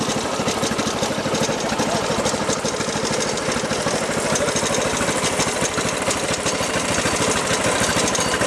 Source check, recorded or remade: recorded